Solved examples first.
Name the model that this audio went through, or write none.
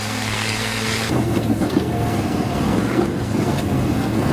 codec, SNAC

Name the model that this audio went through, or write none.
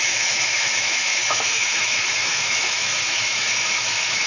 autoencoder, DAC-VAE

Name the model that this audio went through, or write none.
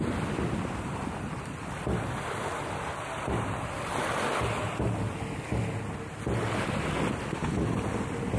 none